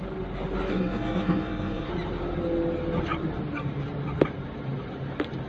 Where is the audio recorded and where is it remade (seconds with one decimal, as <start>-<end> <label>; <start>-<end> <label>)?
0.0-0.7 recorded; 0.7-1.9 remade; 1.9-5.5 recorded